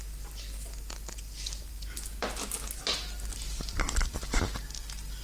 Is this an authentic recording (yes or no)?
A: yes